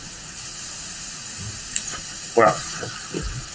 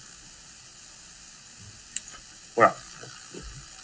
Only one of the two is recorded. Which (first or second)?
second